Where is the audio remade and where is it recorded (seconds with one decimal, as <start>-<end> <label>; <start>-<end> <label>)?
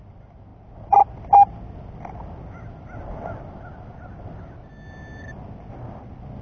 0.0-6.4 recorded